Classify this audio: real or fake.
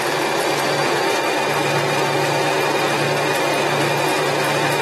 real